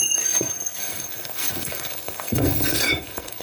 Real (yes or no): no